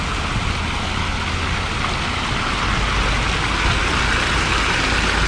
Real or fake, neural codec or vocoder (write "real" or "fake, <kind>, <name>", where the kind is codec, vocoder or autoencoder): real